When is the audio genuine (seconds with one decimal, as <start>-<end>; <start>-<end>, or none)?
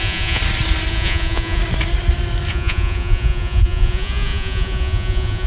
0.4-0.9; 1.6-2.5